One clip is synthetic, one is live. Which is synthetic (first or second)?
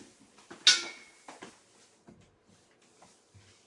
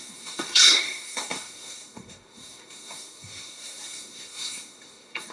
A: second